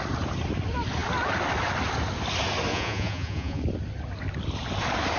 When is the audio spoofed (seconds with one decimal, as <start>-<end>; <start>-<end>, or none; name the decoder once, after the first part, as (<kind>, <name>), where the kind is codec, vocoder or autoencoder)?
2.7-3.6 (vocoder, Vocos)